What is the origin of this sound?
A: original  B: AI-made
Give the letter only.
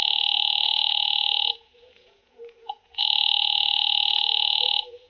B